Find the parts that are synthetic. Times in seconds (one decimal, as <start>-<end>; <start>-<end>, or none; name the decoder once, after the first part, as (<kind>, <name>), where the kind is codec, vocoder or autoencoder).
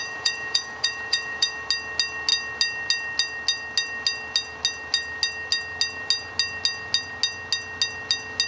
0.0-1.5 (vocoder, Vocos)